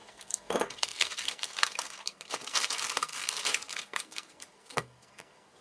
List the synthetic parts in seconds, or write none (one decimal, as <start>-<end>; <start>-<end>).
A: 0.0-5.6